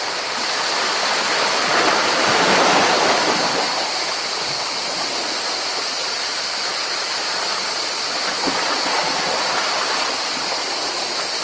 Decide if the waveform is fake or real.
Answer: real